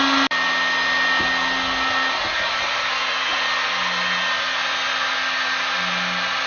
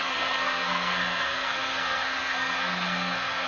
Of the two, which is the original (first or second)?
first